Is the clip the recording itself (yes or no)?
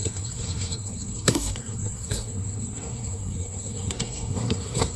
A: no